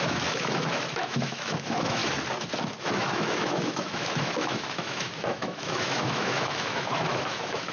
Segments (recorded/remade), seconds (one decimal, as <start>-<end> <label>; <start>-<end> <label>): 0.0-2.0 remade; 2.0-2.8 recorded; 2.8-7.7 remade